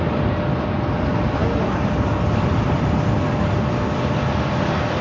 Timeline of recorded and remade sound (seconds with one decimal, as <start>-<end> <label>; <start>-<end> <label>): 0.0-5.0 recorded